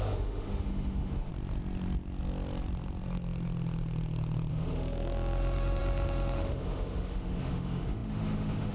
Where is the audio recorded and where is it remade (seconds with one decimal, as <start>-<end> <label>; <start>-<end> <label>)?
0.0-1.3 remade; 1.3-4.5 recorded; 4.5-8.7 remade